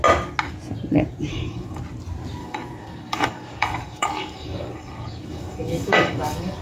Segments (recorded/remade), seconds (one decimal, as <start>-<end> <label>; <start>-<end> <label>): 0.0-1.3 recorded; 1.3-1.8 remade; 1.8-2.4 recorded; 2.4-6.6 remade